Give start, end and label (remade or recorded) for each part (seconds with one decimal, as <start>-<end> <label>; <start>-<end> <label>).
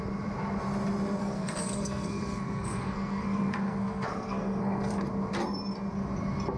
0.0-1.2 recorded; 1.2-4.9 remade; 4.9-6.6 recorded